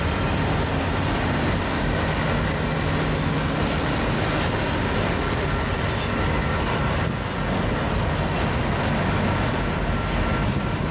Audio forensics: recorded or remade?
recorded